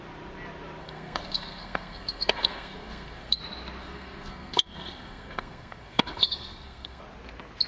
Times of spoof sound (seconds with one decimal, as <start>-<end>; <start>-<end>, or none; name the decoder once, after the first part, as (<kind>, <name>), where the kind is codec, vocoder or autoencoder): 0.8-3.4 (codec, SNAC); 3.8-7.0

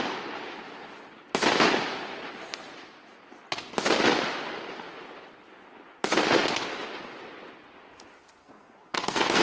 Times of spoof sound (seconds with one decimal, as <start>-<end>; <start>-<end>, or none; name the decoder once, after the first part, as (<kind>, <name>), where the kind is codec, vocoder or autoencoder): 8.4-9.4 (codec, SNAC)